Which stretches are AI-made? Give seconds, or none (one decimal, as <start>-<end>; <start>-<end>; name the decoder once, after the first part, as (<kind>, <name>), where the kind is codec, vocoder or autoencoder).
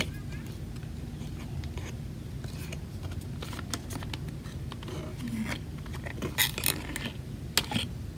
none